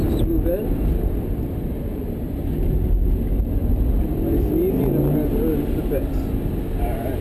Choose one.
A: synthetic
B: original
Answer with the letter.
B